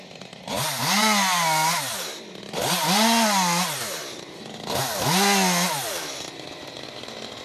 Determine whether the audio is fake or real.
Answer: real